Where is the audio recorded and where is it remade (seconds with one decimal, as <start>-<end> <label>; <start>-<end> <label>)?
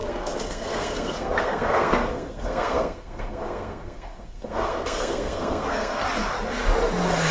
0.0-6.0 remade; 6.0-7.3 recorded